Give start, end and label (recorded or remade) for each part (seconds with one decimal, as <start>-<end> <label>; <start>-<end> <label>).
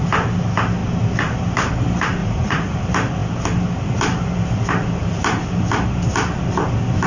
0.0-2.2 recorded; 2.2-2.8 remade; 2.8-7.1 recorded